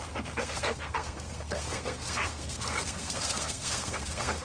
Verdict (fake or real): fake